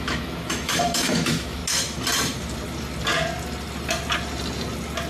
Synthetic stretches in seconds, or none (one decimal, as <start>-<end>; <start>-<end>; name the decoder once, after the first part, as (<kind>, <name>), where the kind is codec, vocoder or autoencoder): 0.0-1.6 (autoencoder, DAC-VAE)